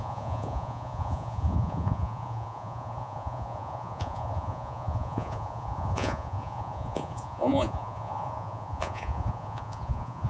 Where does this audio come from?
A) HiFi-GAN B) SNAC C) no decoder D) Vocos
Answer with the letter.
D